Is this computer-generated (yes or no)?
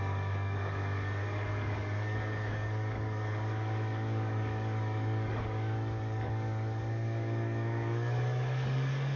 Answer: yes